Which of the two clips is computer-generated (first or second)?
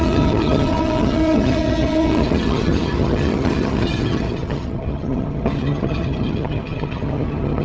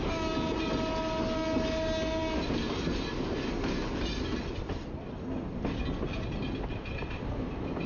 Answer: first